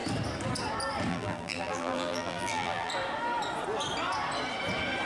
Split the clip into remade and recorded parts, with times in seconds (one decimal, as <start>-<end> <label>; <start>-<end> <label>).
0.0-1.1 recorded; 1.1-2.9 remade; 2.9-5.1 recorded